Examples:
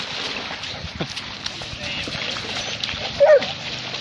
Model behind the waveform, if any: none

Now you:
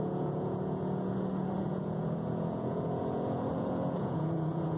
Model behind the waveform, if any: vocoder, Vocos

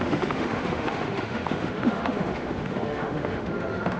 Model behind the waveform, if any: autoencoder, DAC-VAE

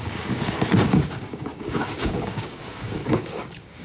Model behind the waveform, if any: codec, DAC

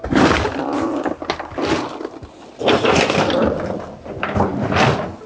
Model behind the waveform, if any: none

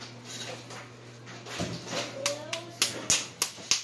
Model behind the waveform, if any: none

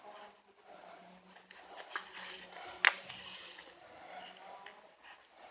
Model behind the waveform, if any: none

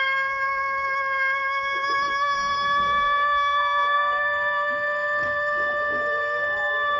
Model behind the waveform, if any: codec, DAC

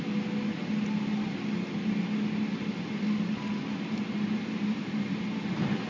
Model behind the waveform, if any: none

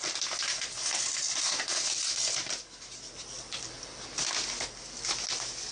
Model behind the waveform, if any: none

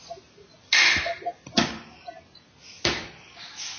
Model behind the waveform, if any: none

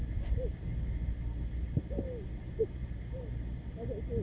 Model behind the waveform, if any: none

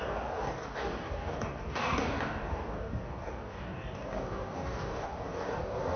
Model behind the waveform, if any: codec, DAC